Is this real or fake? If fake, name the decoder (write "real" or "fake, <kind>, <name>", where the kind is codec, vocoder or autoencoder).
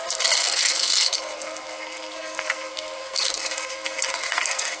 fake, codec, SNAC